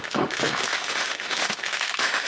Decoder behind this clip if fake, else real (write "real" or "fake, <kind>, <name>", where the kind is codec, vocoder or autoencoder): fake, autoencoder, DAC-VAE